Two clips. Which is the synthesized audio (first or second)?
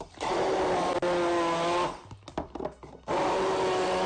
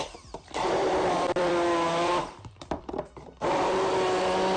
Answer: second